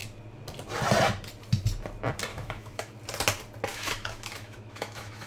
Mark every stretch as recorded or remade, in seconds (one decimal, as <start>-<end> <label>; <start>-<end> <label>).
0.0-2.3 recorded; 2.3-2.9 remade; 2.9-3.7 recorded; 3.7-5.3 remade